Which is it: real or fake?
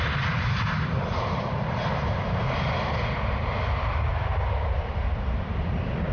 fake